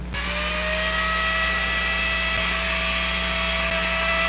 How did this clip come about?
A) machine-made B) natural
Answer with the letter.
B